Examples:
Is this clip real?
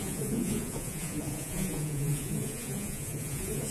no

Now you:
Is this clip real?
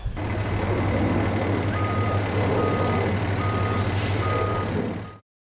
yes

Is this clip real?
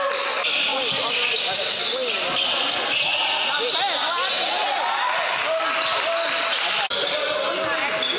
yes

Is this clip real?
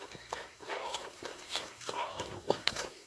no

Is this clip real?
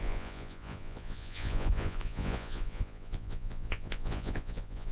no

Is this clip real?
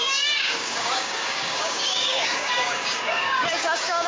no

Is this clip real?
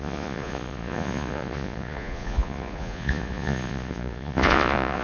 no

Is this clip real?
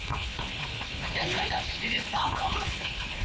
no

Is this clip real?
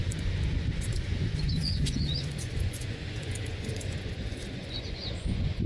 no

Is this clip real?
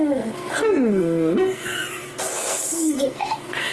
no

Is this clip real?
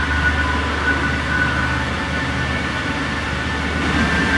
no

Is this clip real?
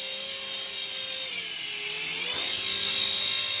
yes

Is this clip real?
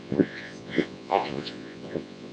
no